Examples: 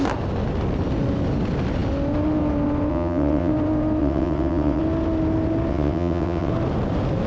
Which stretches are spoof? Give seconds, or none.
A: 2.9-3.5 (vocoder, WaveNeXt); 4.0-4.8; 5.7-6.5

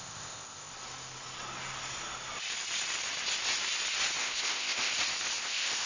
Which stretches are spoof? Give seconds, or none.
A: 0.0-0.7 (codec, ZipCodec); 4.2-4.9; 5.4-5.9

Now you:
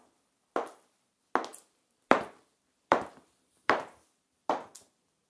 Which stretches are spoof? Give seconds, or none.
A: 1.5-4.7 (vocoder, BigVGAN v2)